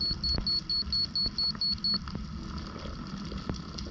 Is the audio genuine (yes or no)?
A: yes